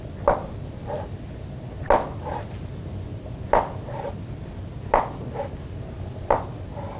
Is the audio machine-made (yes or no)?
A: no